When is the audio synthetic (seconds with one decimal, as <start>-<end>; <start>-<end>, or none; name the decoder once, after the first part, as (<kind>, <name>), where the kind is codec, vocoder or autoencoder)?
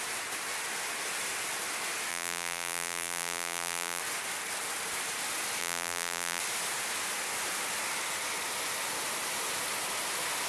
2.1-4.0 (vocoder, BigVGAN v2); 5.6-6.4